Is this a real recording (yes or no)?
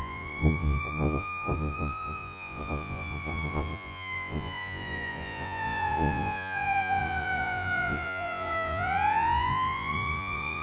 no